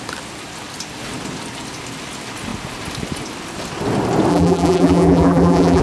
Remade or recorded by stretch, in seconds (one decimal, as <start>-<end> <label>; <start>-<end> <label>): 0.0-4.3 recorded; 4.3-5.8 remade